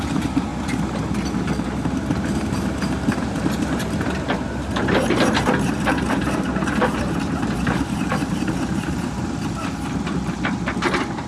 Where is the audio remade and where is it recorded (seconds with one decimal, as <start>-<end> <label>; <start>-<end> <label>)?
0.0-0.5 remade; 0.5-1.4 recorded; 1.4-11.3 remade